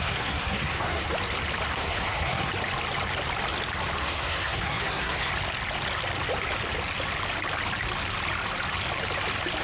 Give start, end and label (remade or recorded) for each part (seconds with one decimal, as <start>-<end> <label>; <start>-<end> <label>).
0.0-1.0 remade; 1.0-1.7 recorded; 1.7-2.5 remade; 2.5-4.0 recorded; 4.0-5.3 remade; 5.3-9.6 recorded